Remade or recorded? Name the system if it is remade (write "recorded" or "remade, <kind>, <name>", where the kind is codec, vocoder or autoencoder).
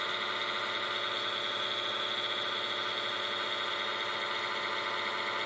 recorded